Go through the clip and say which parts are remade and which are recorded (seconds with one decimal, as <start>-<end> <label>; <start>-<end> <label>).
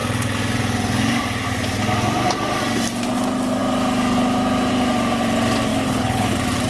0.0-5.7 recorded; 5.7-6.3 remade; 6.3-6.7 recorded